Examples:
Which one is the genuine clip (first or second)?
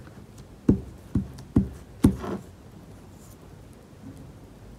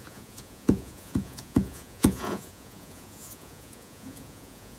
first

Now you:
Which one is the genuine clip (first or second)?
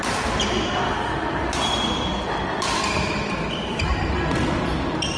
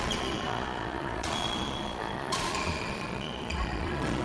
first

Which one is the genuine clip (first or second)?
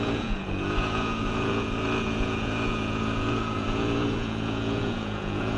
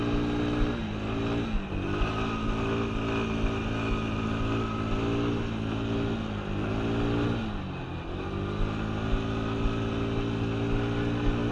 second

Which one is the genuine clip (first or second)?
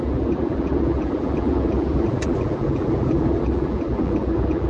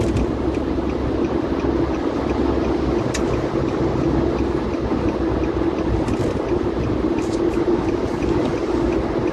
second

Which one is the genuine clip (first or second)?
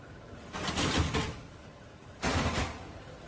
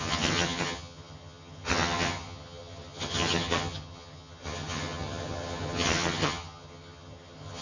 first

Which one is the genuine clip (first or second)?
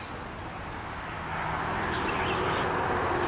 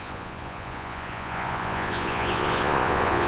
first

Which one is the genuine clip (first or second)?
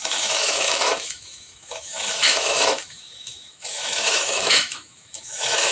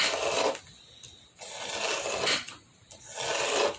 second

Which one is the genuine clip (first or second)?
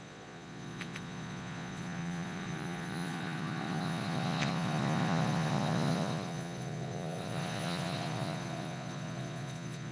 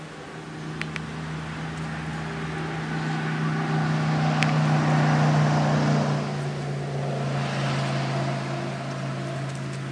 second